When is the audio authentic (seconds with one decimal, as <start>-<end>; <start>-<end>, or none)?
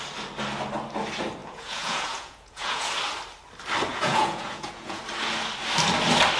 0.0-1.4; 2.9-3.9; 5.0-6.4